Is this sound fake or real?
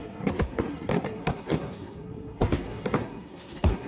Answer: fake